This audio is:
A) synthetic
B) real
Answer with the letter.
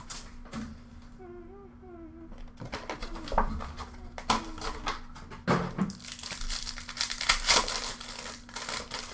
B